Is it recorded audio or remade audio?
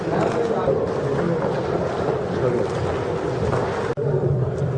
recorded